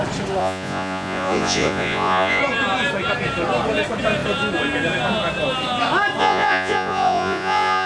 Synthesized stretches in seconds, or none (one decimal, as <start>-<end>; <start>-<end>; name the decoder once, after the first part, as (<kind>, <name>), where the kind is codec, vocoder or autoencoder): 0.4-2.4 (vocoder, Vocos); 6.2-7.9